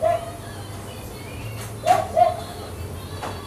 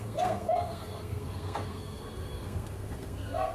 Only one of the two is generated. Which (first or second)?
second